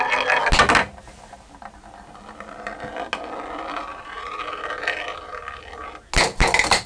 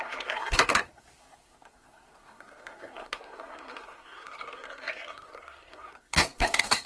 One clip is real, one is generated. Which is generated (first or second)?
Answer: second